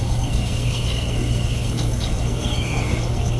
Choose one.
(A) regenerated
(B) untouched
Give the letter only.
A